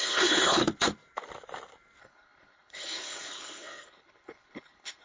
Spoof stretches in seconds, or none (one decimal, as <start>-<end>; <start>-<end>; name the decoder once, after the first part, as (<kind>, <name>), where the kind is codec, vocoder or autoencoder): 0.0-0.6 (codec, HILCodec); 2.0-5.0

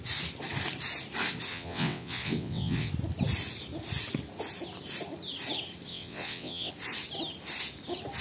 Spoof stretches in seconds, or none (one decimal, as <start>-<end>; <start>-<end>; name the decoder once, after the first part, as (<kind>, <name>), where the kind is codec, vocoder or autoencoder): 1.5-2.9 (vocoder, WaveNeXt); 5.9-6.7

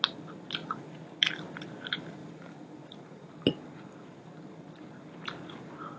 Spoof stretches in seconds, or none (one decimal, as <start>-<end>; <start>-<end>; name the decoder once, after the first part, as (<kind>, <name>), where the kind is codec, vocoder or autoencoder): 0.6-1.1 (vocoder, Vocos); 2.2-3.3

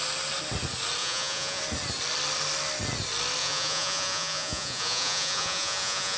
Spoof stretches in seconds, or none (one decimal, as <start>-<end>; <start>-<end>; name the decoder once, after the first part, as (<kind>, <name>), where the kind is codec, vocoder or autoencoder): 1.0-1.6 (vocoder, Vocos); 3.4-6.2

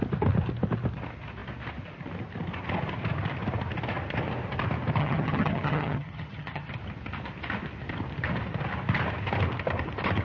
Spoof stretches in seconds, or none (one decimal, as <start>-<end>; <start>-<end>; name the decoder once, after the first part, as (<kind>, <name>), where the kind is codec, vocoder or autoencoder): 5.0-6.7 (vocoder, HiFi-GAN)

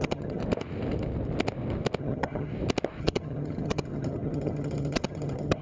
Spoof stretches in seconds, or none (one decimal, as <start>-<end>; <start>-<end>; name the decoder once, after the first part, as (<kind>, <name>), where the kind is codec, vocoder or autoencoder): 0.0-0.4 (vocoder, HiFi-GAN); 2.0-2.5; 3.0-5.6

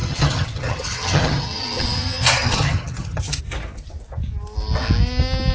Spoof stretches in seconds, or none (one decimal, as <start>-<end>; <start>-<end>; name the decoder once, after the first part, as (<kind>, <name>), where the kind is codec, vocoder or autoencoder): 0.0-3.2 (vocoder, HiFi-GAN)